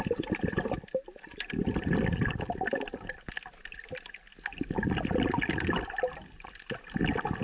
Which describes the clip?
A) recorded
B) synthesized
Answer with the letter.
A